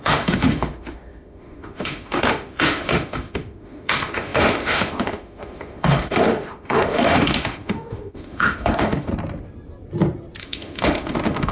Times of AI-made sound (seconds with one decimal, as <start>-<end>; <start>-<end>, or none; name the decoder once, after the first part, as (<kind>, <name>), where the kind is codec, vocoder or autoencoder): 0.0-9.1 (autoencoder, DAC-VAE); 10.4-11.5